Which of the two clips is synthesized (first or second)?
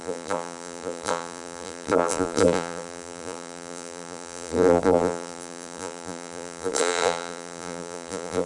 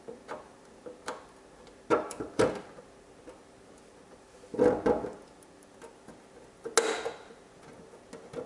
first